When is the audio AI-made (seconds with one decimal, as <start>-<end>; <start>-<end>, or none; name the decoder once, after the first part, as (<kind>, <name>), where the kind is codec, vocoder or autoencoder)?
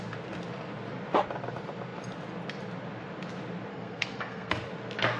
3.7-4.5 (codec, SNAC)